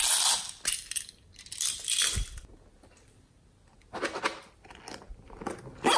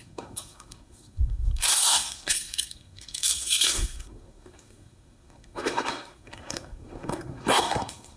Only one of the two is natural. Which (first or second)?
first